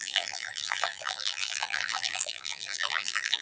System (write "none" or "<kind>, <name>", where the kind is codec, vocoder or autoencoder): vocoder, BigVGAN v2